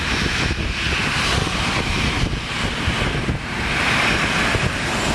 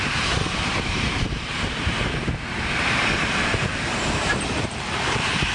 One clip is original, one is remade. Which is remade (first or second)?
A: second